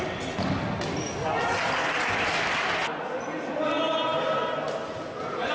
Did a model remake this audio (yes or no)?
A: no